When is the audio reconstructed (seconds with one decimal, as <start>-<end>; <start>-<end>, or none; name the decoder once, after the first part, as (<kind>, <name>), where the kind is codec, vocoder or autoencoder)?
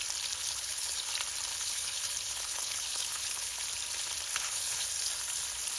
0.4-1.1 (codec, HILCodec); 1.5-3.6; 4.3-4.9